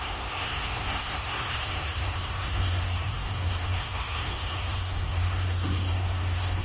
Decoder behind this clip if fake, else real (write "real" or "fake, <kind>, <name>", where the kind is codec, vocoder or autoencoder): fake, codec, SNAC